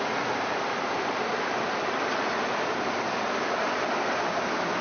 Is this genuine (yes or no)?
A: yes